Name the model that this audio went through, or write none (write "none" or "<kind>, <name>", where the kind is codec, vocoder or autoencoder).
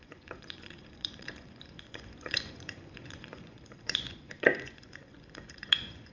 vocoder, Vocos